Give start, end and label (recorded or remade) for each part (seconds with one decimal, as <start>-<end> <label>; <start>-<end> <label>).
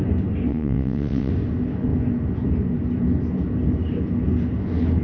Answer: 0.0-0.5 recorded; 0.5-1.3 remade; 1.3-5.0 recorded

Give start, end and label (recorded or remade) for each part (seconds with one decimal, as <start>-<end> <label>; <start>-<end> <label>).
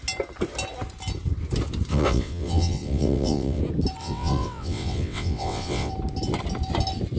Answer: 0.0-1.9 recorded; 1.9-3.6 remade; 3.6-4.0 recorded; 4.0-5.9 remade; 5.9-7.2 recorded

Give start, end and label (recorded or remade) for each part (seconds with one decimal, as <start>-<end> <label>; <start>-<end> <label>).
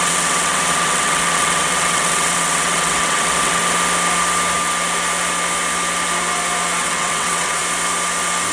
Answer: 0.0-3.6 remade; 3.6-6.8 recorded; 6.8-7.6 remade; 7.6-8.5 recorded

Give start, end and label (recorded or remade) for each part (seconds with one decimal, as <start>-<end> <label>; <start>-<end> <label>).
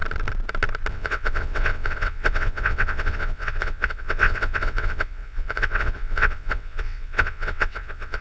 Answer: 0.0-0.9 recorded; 0.9-8.2 remade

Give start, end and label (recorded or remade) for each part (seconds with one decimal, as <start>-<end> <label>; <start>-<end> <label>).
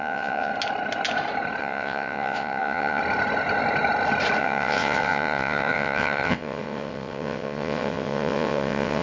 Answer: 0.0-0.5 remade; 0.5-1.6 recorded; 1.6-3.0 remade; 3.0-4.4 recorded; 4.4-9.0 remade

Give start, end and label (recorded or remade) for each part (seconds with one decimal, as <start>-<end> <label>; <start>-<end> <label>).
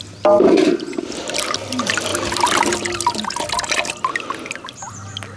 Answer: 0.0-5.4 recorded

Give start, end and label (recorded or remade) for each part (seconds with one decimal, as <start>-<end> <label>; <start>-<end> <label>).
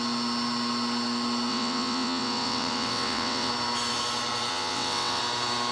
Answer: 0.0-1.5 recorded; 1.5-3.5 remade; 3.5-4.5 recorded; 4.5-5.2 remade; 5.2-5.7 recorded